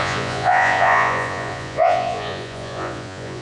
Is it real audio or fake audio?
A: fake